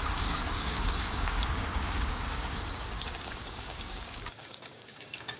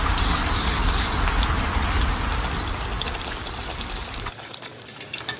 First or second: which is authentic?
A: second